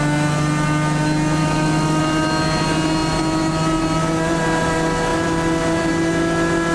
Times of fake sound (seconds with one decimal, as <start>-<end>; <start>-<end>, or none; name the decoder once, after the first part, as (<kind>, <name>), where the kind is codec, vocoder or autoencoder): 1.4-2.0 (autoencoder, DAC-VAE)